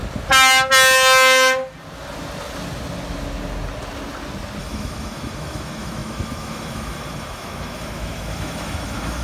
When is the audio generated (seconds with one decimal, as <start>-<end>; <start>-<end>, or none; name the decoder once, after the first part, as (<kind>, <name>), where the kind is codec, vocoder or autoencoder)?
4.6-9.2 (autoencoder, DAC-VAE)